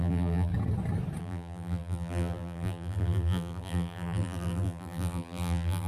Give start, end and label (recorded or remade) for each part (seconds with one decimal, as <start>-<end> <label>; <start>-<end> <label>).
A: 0.0-0.5 remade; 0.5-1.2 recorded; 1.2-5.9 remade